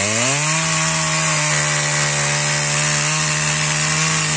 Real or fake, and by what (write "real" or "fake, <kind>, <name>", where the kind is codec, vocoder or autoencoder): real